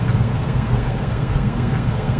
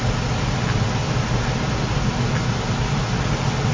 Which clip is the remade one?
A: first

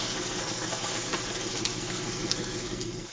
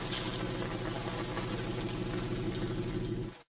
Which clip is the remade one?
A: first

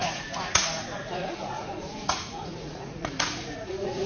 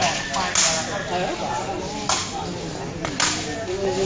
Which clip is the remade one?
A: first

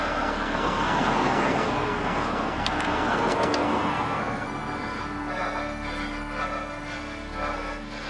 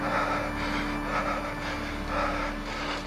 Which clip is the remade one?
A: first